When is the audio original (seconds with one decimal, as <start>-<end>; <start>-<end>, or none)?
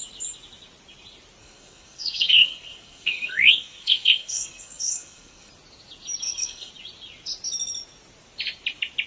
0.0-1.4; 5.5-6.2; 6.7-9.1